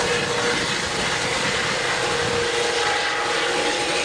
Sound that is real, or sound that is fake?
real